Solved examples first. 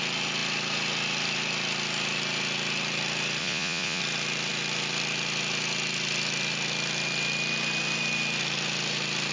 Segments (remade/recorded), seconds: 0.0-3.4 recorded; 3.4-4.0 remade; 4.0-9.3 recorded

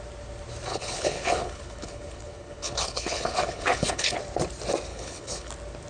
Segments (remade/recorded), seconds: 0.0-0.7 recorded; 0.7-4.2 remade; 4.2-4.9 recorded; 4.9-5.5 remade; 5.5-5.9 recorded